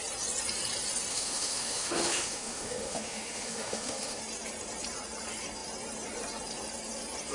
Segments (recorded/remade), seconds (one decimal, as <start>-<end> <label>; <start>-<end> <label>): 0.0-1.1 recorded; 1.1-4.2 remade; 4.2-7.3 recorded